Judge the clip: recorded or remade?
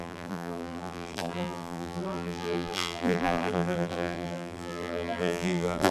remade